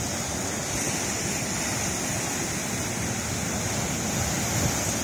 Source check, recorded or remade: recorded